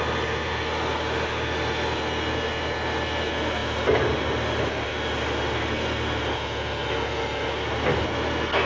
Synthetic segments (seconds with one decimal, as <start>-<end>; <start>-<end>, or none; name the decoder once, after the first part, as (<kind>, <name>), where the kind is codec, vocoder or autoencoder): none